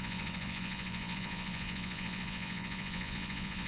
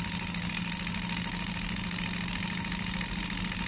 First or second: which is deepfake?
first